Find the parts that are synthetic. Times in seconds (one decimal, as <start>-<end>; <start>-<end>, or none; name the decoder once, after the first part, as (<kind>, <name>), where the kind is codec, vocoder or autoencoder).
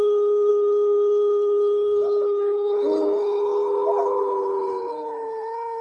0.0-5.8 (codec, HILCodec)